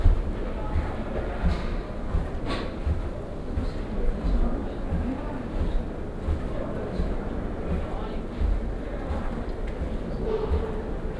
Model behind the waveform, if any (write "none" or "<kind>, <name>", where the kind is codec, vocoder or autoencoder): none